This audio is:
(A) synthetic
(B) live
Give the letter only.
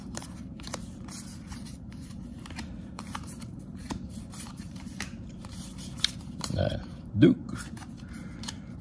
A